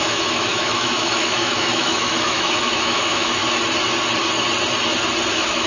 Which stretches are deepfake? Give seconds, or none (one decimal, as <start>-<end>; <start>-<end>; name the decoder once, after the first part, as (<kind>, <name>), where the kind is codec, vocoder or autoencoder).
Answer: 0.0-3.4 (autoencoder, DAC-VAE); 5.3-5.7